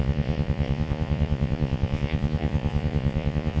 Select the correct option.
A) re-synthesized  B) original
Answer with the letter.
A